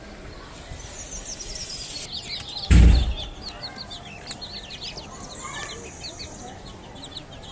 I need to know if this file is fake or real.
real